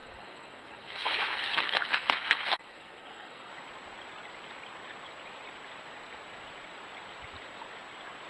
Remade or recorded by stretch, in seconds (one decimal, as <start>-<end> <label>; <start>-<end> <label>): 0.0-3.5 remade; 3.5-8.3 recorded